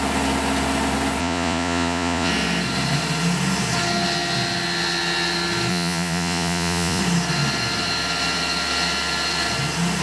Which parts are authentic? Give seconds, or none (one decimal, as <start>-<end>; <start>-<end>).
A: 0.0-1.2; 2.3-5.7; 7.0-10.0